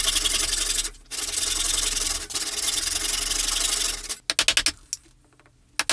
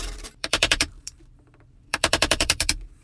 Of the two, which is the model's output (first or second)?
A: second